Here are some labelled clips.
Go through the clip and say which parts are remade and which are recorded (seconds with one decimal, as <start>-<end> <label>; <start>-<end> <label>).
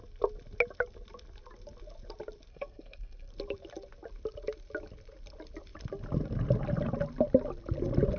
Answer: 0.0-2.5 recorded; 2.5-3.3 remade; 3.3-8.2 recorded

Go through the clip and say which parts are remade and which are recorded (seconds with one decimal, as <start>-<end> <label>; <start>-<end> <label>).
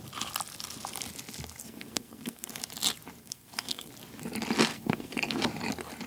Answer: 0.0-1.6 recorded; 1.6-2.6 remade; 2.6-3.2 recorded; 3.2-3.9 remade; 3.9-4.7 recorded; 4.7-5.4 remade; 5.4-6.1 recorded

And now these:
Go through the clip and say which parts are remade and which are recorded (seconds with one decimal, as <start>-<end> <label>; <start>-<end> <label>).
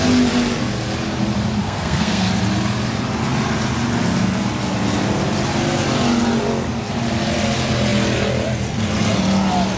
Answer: 0.0-1.6 recorded; 1.6-2.3 remade; 2.3-9.8 recorded